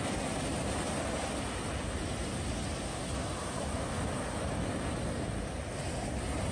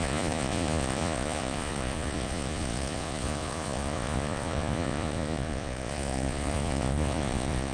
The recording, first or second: first